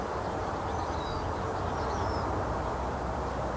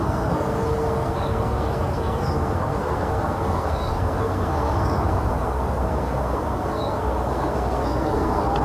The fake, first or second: second